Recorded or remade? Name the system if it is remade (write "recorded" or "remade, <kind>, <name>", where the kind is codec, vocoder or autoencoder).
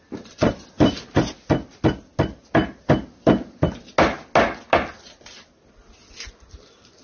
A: recorded